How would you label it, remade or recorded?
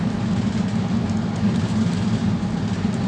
recorded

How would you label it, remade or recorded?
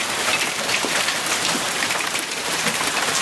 remade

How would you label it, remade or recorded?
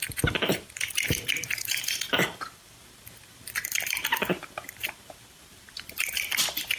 remade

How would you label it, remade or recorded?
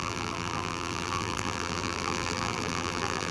remade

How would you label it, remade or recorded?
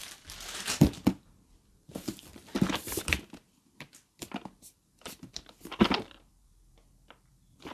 remade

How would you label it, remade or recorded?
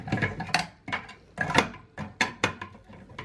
recorded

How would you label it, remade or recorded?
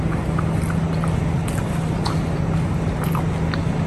recorded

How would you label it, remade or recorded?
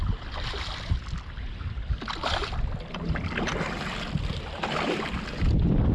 recorded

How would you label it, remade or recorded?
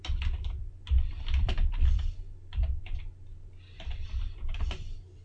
remade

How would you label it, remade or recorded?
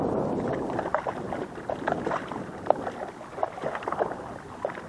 remade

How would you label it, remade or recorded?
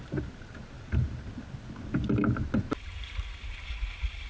recorded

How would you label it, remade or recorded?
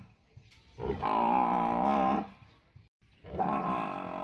remade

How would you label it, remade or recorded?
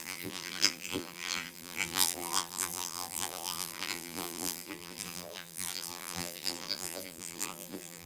remade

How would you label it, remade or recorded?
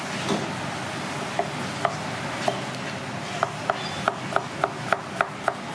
recorded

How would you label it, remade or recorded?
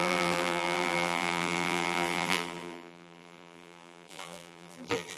remade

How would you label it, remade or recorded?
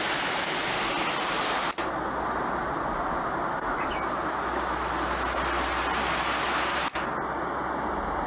recorded